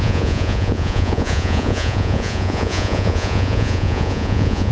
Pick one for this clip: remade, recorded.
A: remade